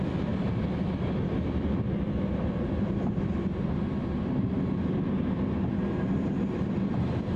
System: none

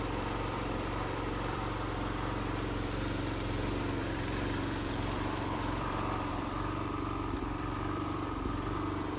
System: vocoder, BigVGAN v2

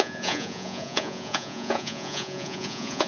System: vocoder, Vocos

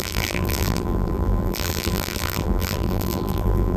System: vocoder, BigVGAN v2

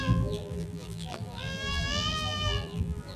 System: vocoder, BigVGAN v2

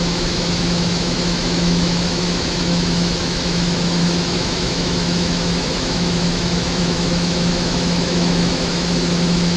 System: autoencoder, DAC-VAE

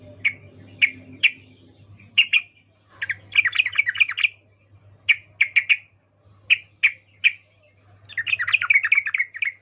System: none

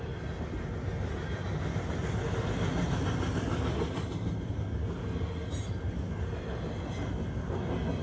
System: none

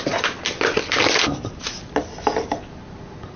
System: none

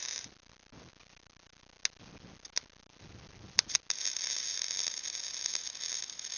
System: none